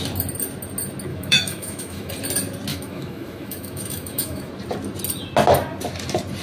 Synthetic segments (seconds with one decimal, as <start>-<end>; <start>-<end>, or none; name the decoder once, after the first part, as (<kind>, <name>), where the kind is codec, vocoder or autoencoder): 1.1-2.1 (autoencoder, DAC-VAE); 2.7-4.5